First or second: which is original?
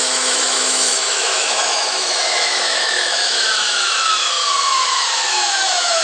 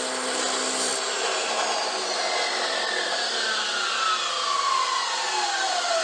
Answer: second